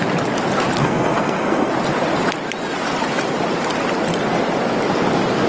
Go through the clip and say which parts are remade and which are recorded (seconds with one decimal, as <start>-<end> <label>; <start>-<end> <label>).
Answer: 0.0-0.8 recorded; 0.8-1.7 remade; 1.7-5.5 recorded